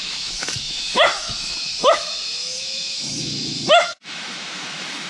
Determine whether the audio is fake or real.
fake